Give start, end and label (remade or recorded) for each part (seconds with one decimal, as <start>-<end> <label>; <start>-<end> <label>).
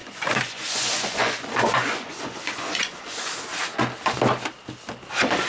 0.0-3.3 remade; 3.3-5.5 recorded